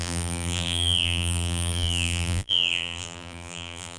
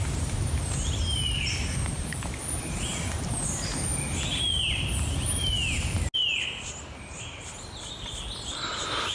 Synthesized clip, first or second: first